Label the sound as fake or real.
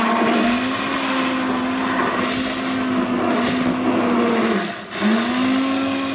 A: real